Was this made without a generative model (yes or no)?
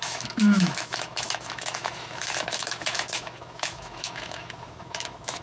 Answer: no